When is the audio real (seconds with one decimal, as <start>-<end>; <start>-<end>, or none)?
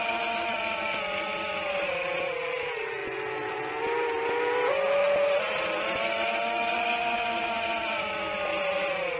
0.0-3.0; 3.6-9.2